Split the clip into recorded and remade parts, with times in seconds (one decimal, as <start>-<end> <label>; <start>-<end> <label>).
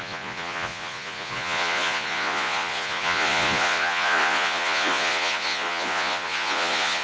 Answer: 0.0-7.0 remade